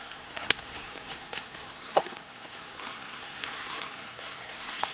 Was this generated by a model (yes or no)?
yes